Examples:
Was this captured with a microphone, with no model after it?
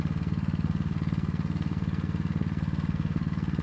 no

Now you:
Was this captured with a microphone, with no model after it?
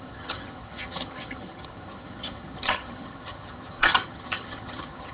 no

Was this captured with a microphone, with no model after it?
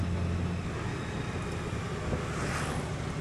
yes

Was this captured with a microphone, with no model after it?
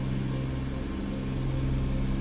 yes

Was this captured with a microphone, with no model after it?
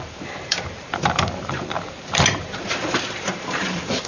no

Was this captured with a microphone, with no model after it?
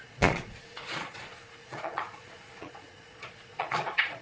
no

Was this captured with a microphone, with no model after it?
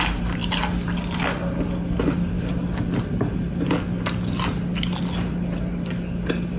yes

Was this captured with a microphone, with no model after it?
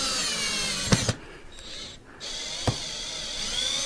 yes